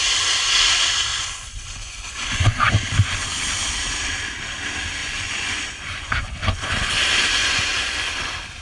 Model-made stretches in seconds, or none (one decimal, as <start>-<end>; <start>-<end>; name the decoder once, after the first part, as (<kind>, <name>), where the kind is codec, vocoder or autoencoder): 1.1-2.7 (vocoder, Vocos); 5.0-6.9; 7.4-8.1